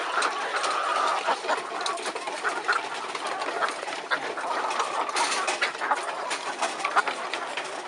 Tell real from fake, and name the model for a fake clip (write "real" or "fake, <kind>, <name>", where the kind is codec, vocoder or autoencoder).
real